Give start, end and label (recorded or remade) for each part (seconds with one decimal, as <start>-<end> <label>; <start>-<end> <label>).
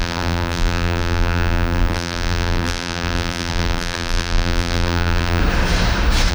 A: 0.0-5.4 remade; 5.4-6.3 recorded